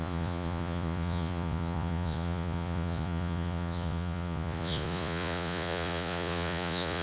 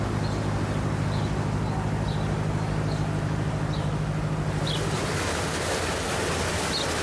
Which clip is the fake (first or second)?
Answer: first